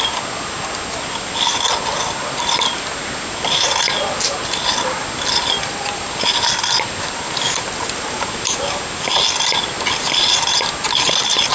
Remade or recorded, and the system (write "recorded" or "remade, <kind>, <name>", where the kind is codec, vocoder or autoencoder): recorded